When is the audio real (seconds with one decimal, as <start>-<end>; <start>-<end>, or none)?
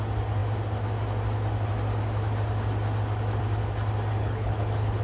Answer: 0.0-4.2